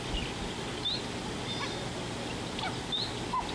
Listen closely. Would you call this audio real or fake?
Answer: real